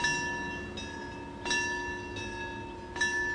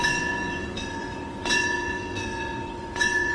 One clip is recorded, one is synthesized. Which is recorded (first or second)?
first